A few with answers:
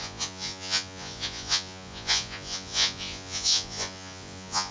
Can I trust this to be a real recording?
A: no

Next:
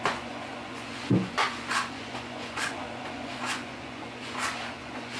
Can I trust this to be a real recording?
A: no